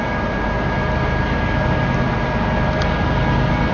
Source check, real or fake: real